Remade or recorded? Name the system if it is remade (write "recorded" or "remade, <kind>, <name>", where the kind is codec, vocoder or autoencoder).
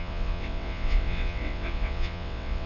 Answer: remade, vocoder, WaveNeXt